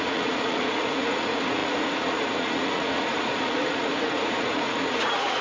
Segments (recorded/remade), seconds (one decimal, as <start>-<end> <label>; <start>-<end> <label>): 0.0-5.4 remade